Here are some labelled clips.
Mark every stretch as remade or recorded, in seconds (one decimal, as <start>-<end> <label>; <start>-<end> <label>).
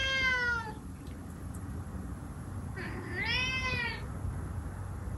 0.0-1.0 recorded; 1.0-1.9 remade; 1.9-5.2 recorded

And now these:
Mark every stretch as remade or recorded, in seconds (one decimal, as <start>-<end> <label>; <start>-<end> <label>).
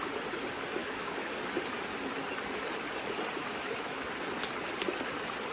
0.0-0.8 recorded; 0.8-1.3 remade; 1.3-3.4 recorded; 3.4-4.1 remade; 4.1-5.5 recorded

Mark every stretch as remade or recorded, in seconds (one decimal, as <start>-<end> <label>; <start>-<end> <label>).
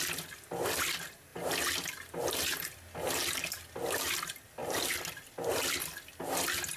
0.0-4.6 recorded; 4.6-5.2 remade; 5.2-6.8 recorded